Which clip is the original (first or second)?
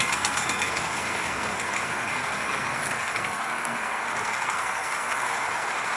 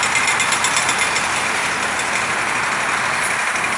second